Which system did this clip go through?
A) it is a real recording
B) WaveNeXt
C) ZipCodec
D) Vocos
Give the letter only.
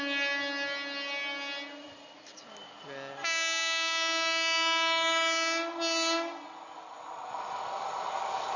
A